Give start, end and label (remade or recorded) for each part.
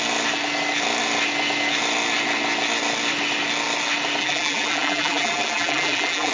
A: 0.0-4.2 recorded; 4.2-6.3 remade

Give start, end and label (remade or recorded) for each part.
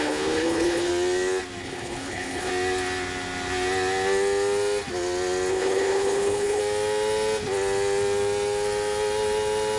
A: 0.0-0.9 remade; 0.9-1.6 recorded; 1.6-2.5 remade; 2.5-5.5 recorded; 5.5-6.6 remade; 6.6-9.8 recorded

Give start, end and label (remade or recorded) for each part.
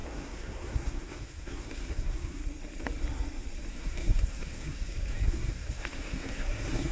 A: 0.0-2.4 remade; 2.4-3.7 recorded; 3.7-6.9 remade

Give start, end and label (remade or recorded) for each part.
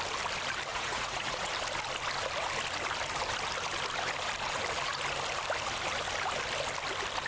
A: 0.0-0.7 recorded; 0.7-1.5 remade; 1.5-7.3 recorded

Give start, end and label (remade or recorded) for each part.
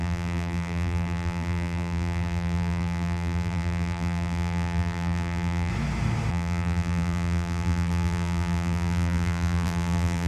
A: 0.0-5.7 remade; 5.7-6.3 recorded; 6.3-10.3 remade